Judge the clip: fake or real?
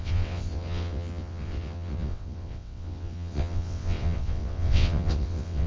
fake